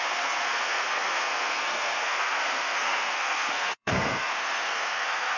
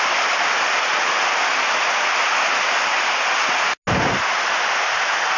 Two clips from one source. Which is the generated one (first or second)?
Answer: first